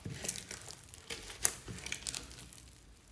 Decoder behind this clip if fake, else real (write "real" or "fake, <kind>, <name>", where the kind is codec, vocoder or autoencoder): real